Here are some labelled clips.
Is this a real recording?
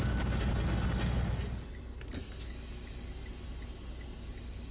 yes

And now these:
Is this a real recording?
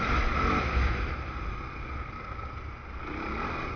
yes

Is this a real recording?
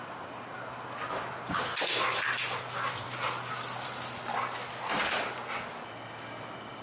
yes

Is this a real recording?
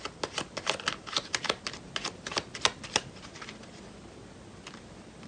yes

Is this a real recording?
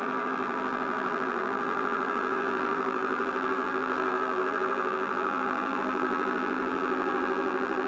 no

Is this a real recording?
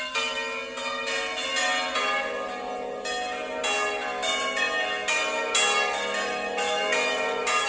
yes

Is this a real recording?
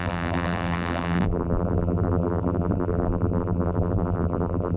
no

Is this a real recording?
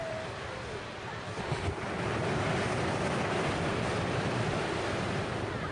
no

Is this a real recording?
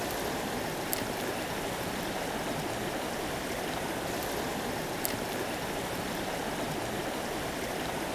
yes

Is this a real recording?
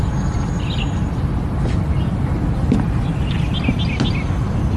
yes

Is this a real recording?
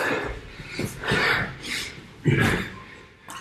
yes